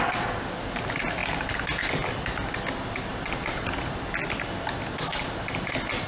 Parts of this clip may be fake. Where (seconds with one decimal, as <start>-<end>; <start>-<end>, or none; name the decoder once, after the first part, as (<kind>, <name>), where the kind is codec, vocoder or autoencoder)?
none